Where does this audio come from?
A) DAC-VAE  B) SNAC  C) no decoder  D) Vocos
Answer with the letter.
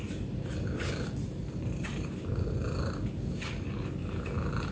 C